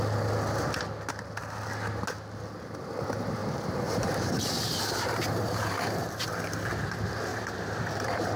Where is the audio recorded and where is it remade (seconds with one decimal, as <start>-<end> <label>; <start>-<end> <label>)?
0.0-3.4 recorded; 3.4-6.1 remade; 6.1-7.3 recorded; 7.3-8.4 remade